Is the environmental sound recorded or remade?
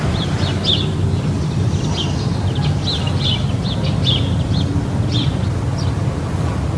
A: recorded